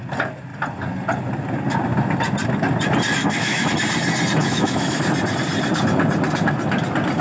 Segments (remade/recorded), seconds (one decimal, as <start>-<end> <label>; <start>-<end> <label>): 0.0-3.2 recorded; 3.2-3.7 remade; 3.7-4.4 recorded; 4.4-5.0 remade; 5.0-7.2 recorded